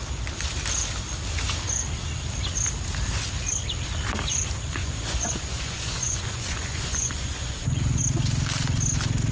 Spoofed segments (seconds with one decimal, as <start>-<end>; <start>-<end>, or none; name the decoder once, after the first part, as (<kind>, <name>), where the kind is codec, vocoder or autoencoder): 4.8-8.0 (vocoder, Vocos)